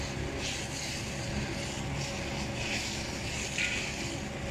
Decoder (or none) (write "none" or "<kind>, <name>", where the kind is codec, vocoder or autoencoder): none